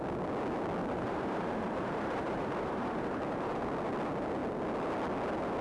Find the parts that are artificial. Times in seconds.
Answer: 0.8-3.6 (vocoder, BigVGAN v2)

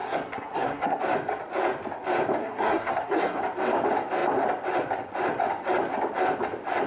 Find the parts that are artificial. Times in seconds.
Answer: 0.0-1.0 (codec, SNAC); 2.4-3.4

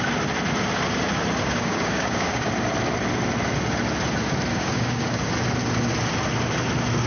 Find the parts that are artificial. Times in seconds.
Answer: 1.4-2.5 (codec, DAC); 4.5-5.3

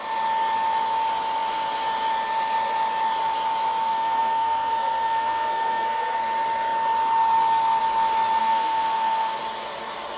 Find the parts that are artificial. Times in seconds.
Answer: 3.8-6.2 (codec, SNAC); 8.4-9.4

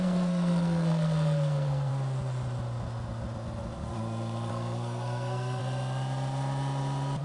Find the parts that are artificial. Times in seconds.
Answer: 0.0-1.9 (codec, SNAC); 4.5-5.6